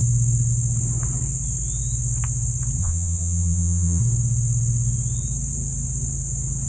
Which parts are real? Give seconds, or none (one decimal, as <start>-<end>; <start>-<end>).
0.0-2.8; 4.0-6.7